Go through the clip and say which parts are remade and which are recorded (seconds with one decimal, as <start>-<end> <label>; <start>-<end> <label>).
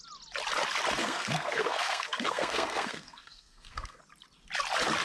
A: 0.0-1.0 recorded; 1.0-4.0 remade; 4.0-5.0 recorded